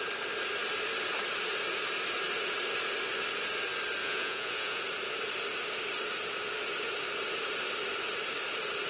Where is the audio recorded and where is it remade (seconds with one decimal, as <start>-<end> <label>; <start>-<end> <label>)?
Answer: 0.0-4.0 recorded; 4.0-4.8 remade; 4.8-8.9 recorded